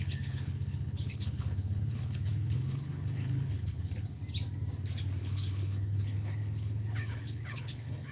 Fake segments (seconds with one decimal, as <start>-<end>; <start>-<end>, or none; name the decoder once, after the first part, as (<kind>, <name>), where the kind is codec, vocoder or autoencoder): 0.0-4.2 (codec, HILCodec); 5.2-8.1